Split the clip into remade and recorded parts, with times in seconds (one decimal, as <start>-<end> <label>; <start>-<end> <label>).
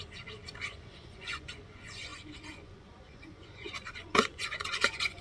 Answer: 0.0-5.2 remade